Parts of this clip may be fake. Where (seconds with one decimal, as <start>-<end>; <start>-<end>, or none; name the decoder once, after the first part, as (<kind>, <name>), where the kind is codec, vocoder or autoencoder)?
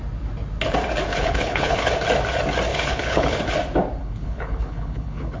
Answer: 1.1-1.9 (codec, HILCodec); 2.7-3.5; 4.0-5.4